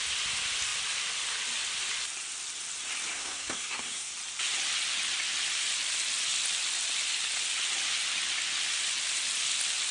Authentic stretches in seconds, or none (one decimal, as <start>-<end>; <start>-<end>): 0.0-3.1; 4.1-9.9